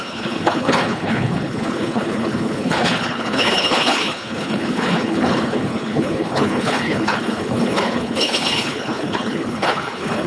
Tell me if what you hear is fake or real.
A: fake